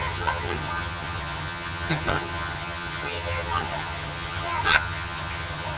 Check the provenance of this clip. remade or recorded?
remade